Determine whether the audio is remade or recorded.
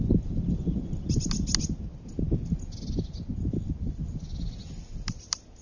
recorded